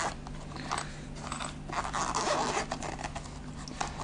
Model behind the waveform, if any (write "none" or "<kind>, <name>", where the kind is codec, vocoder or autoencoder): none